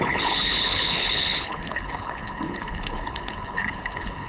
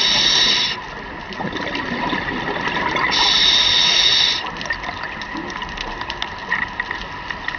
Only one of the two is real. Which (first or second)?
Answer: second